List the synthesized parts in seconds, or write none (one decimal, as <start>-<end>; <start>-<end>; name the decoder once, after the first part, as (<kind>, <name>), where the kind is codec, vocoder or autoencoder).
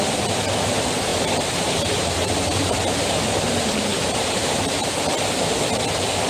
1.1-2.8 (vocoder, BigVGAN v2); 3.9-4.6